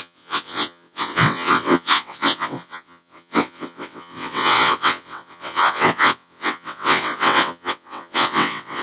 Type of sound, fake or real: fake